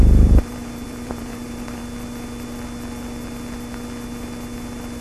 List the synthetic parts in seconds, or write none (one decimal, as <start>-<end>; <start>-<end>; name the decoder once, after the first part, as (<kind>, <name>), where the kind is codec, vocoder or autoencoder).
0.0-1.8 (vocoder, BigVGAN v2)